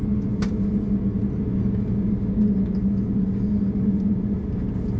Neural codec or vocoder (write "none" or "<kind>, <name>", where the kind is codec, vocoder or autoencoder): none